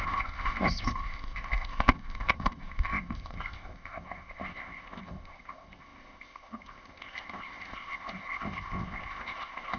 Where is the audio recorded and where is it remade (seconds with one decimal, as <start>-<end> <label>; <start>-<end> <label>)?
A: 0.0-9.8 remade